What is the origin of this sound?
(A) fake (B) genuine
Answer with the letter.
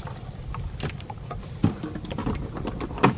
B